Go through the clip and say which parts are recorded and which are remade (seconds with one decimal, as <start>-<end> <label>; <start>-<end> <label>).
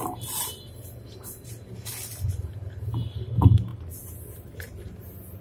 0.0-5.4 recorded